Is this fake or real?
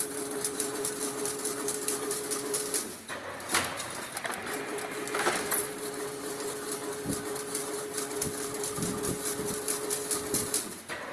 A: real